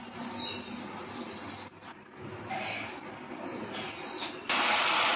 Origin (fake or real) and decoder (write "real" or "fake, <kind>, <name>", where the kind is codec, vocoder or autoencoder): real